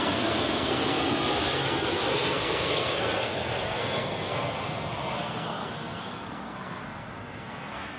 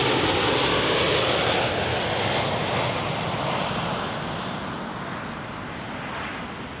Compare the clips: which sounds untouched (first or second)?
second